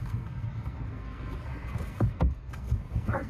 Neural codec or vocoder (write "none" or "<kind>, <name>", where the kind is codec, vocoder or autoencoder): codec, SNAC